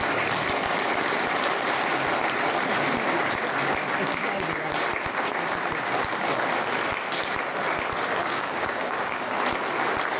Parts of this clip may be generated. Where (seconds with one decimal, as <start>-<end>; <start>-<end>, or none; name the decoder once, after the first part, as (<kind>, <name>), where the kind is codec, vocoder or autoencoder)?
8.2-9.2 (codec, DAC)